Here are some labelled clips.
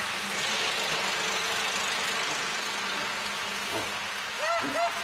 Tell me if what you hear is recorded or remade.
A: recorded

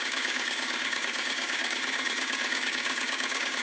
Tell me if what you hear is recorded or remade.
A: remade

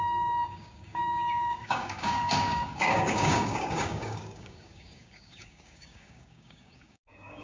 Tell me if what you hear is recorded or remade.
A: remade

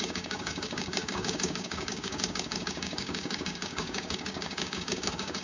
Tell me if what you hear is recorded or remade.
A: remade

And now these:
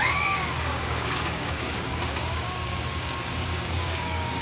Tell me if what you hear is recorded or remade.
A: remade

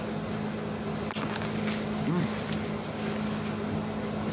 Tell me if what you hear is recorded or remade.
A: recorded